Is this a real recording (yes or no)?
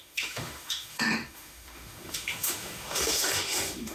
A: no